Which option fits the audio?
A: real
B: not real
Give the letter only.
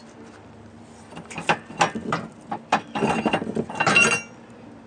A